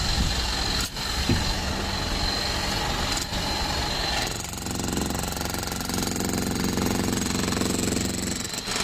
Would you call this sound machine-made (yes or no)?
no